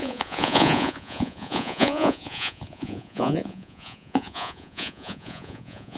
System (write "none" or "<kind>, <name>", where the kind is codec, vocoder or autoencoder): vocoder, Vocos